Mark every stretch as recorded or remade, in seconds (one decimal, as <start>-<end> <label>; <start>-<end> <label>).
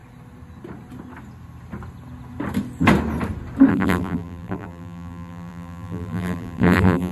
0.0-3.7 recorded; 3.7-7.1 remade